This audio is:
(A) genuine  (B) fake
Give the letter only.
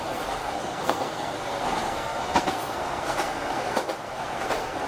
B